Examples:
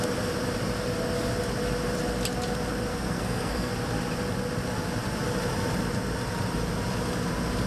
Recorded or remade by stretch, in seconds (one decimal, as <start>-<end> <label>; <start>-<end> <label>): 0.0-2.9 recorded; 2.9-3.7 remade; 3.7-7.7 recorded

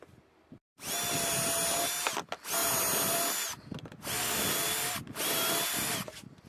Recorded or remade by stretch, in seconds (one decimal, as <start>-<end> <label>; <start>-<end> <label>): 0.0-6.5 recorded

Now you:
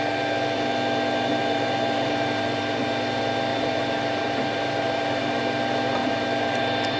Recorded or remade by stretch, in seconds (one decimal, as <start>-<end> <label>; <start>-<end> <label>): 0.0-1.4 recorded; 1.4-2.6 remade; 2.6-3.5 recorded; 3.5-5.4 remade; 5.4-6.0 recorded; 6.0-6.6 remade; 6.6-7.0 recorded

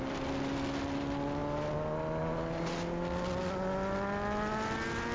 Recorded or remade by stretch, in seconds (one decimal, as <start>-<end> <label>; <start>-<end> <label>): 0.0-5.1 recorded

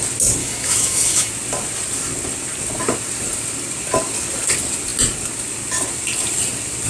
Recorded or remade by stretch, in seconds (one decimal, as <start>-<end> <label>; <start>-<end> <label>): 0.0-0.4 recorded; 0.4-1.3 remade; 1.3-6.9 recorded

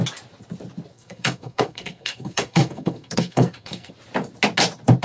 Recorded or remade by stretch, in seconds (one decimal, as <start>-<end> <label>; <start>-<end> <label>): 0.0-0.9 recorded; 0.9-3.9 remade; 3.9-5.0 recorded